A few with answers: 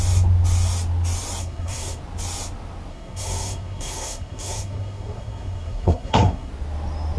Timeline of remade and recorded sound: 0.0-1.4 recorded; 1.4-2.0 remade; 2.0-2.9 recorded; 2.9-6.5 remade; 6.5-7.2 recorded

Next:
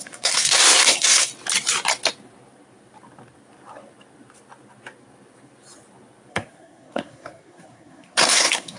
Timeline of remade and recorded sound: 0.0-1.3 remade; 1.3-6.3 recorded; 6.3-8.8 remade

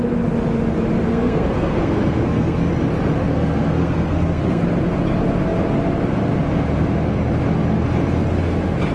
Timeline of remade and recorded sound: 0.0-1.1 recorded; 1.1-2.7 remade; 2.7-3.2 recorded; 3.2-4.6 remade; 4.6-8.9 recorded